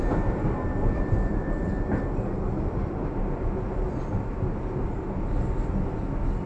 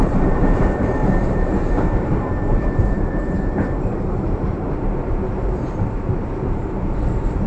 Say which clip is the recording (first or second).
first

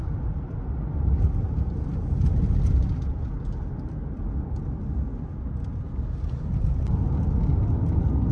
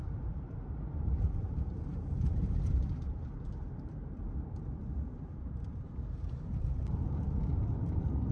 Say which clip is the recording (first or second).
first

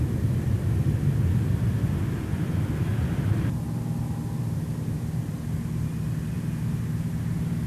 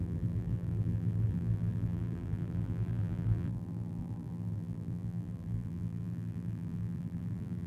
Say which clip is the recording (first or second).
first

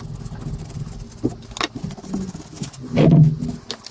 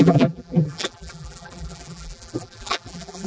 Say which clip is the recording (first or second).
first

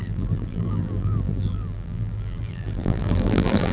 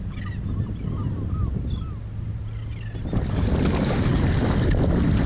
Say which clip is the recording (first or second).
second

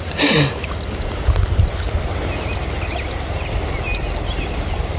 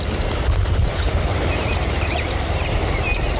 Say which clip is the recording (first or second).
first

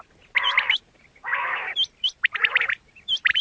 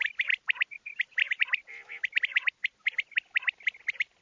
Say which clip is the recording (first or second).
second